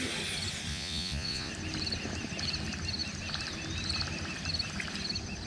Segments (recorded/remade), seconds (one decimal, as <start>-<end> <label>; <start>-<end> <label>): 0.0-0.7 recorded; 0.7-1.5 remade; 1.5-5.5 recorded